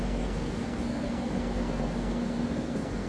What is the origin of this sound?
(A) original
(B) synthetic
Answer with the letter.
B